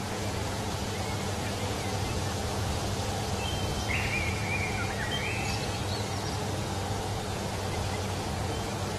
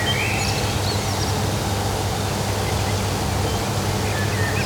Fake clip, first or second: first